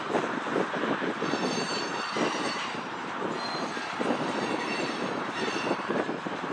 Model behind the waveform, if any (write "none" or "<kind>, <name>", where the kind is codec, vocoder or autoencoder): vocoder, BigVGAN v2